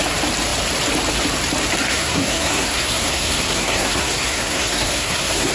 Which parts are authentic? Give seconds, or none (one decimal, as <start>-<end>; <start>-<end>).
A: 0.0-1.9